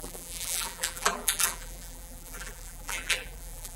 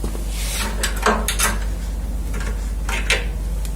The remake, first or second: first